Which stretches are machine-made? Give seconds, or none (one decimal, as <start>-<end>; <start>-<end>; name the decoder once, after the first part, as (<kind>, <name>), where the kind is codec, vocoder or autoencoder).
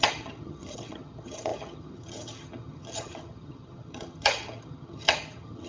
0.0-5.7 (vocoder, HiFi-GAN)